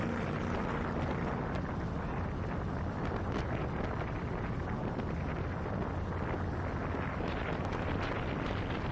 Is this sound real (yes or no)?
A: yes